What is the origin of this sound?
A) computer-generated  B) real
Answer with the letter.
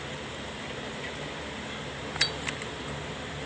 B